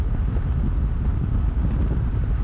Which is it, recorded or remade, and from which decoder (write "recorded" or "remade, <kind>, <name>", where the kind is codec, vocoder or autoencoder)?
recorded